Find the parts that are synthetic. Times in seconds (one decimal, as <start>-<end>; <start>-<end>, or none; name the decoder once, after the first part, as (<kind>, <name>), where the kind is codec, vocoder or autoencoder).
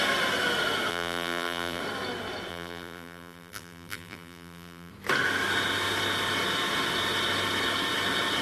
0.9-1.8 (vocoder, BigVGAN v2); 2.5-4.9